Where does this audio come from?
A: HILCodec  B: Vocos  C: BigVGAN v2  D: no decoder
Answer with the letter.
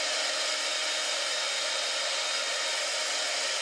D